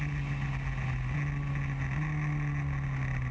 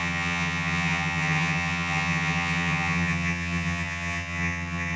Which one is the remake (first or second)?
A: second